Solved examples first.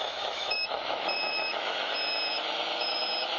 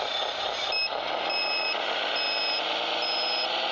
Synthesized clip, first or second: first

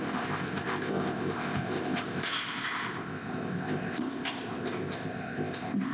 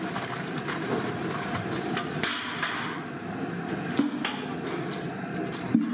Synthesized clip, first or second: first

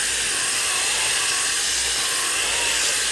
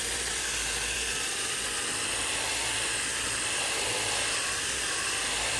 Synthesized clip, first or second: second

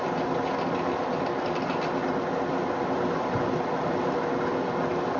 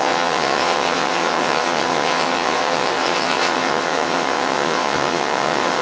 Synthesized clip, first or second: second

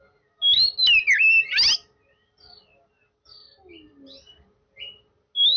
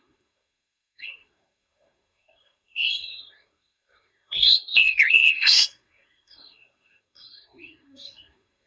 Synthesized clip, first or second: second